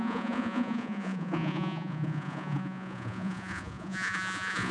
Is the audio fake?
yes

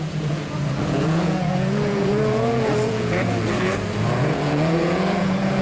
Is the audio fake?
yes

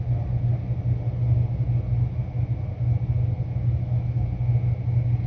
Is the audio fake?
no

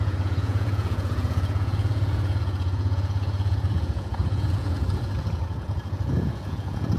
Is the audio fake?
yes